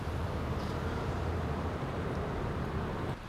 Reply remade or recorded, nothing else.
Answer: remade